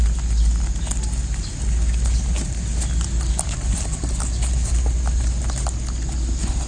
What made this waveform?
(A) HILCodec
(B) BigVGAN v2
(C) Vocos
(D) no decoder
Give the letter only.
D